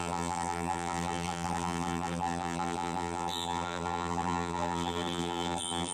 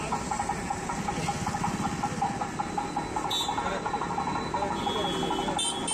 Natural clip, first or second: second